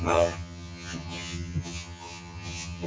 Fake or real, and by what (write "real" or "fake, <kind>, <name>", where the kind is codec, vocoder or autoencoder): fake, vocoder, HiFi-GAN